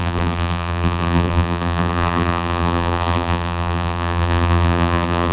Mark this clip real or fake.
fake